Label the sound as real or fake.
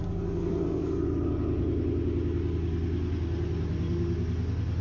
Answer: real